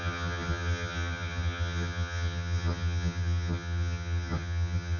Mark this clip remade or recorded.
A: remade